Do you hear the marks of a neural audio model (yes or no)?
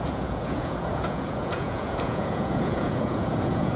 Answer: yes